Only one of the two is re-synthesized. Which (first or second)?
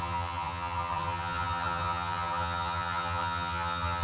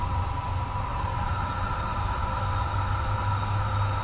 first